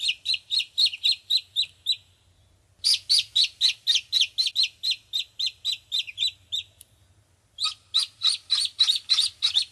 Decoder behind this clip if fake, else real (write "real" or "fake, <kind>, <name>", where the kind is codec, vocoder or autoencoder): real